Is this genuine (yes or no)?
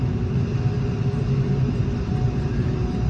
no